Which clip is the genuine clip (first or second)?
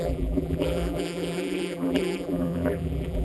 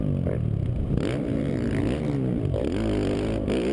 second